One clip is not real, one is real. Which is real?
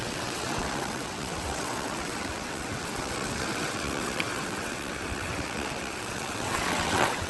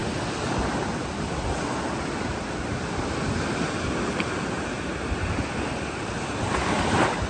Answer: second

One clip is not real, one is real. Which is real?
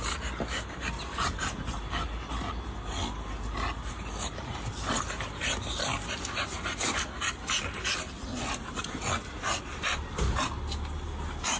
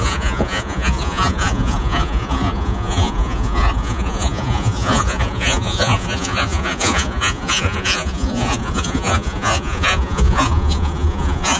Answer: first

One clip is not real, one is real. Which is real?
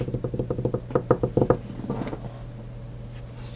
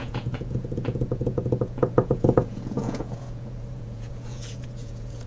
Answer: first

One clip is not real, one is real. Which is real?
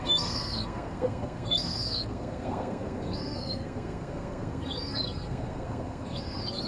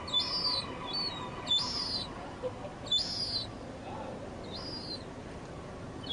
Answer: second